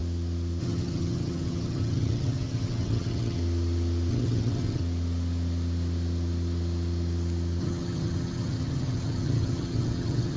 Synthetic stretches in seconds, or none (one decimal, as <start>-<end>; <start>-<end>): 0.6-3.4; 4.1-4.8; 7.6-10.4